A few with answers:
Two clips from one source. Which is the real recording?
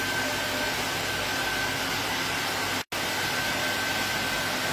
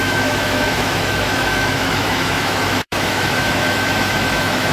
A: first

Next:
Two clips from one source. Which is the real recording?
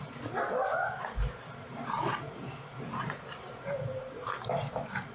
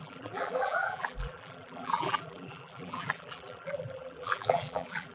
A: first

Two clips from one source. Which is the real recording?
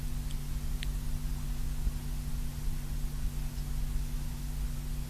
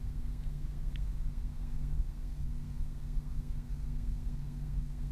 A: first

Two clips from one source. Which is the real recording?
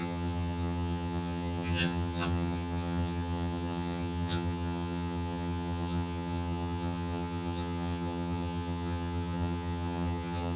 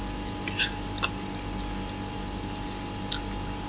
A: second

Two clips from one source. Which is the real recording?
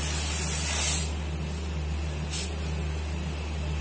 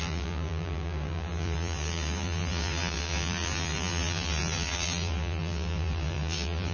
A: first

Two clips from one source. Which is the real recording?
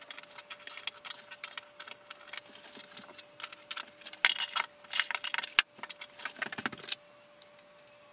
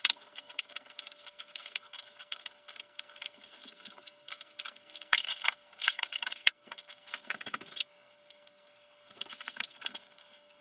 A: first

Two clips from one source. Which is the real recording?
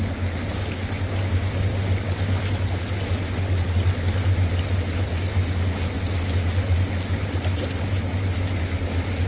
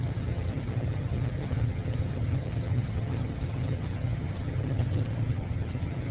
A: first